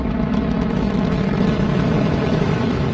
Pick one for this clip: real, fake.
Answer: fake